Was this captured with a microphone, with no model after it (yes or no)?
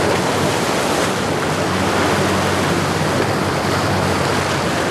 yes